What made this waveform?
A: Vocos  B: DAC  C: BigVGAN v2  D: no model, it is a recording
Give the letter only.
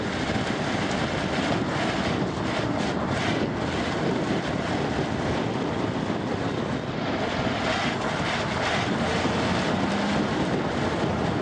D